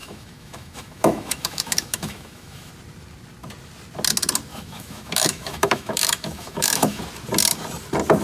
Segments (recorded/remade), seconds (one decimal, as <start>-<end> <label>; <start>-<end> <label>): 0.0-2.7 remade; 2.7-4.5 recorded; 4.5-7.0 remade; 7.0-8.2 recorded

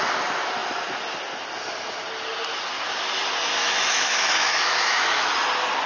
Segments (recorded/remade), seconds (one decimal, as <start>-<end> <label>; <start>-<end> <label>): 0.0-3.6 recorded; 3.6-5.3 remade; 5.3-5.9 recorded

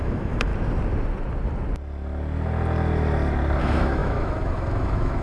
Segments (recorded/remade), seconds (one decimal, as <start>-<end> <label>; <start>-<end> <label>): 0.0-0.5 remade; 0.5-3.6 recorded; 3.6-5.2 remade